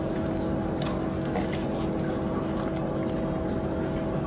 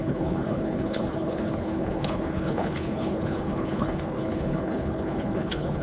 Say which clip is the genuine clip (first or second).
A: first